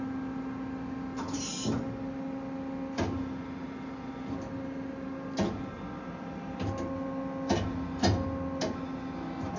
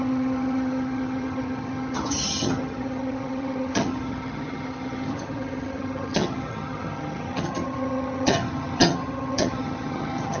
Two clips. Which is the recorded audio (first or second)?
first